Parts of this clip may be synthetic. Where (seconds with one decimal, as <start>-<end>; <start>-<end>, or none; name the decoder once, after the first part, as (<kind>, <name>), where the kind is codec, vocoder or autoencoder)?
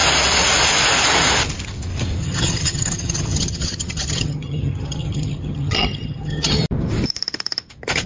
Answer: 2.2-6.6 (vocoder, HiFi-GAN)